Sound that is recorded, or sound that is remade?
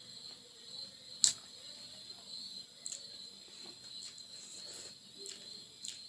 recorded